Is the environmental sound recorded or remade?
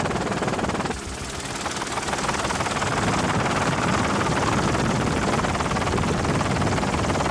recorded